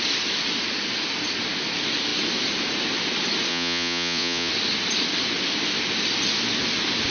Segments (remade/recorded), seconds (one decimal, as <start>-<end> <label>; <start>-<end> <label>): 0.0-3.5 recorded; 3.5-4.5 remade; 4.5-7.1 recorded